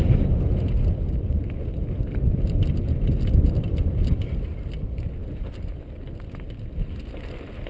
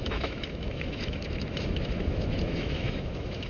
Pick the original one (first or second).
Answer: first